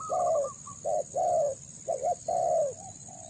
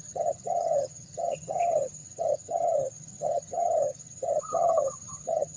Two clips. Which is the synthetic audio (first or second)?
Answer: second